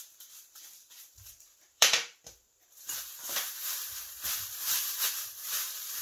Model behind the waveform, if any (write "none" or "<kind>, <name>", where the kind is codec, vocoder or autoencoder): vocoder, BigVGAN v2